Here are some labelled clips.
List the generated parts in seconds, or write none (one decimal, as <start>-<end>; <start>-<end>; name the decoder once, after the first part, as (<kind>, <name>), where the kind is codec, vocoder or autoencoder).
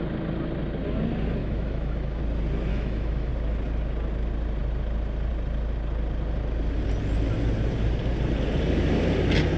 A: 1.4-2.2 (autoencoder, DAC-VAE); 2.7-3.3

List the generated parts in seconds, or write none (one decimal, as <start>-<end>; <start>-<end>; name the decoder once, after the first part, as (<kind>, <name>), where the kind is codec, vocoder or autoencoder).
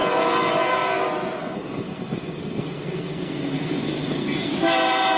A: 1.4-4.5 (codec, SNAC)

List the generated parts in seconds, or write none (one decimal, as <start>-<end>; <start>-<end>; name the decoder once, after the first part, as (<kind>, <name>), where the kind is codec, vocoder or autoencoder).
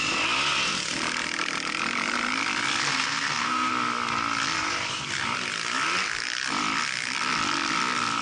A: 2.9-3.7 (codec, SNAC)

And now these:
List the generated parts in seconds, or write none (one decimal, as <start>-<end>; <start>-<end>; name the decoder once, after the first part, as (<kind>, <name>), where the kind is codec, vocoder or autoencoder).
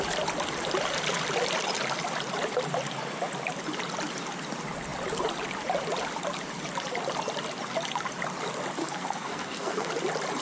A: 8.8-9.9 (codec, SNAC)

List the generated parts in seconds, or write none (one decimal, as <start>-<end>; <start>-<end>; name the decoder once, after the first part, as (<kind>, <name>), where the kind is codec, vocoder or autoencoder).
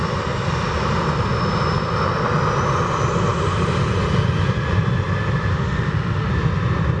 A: 5.5-6.3 (autoencoder, DAC-VAE)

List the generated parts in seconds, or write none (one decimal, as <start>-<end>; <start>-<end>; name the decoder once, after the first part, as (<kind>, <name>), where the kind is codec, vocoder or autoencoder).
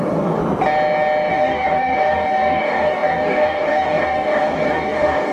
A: 0.0-0.4 (codec, DAC); 1.3-5.3